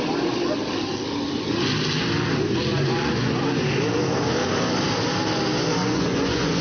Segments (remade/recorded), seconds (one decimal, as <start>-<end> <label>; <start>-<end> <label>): 0.0-2.7 recorded; 2.7-3.4 remade; 3.4-5.8 recorded; 5.8-6.6 remade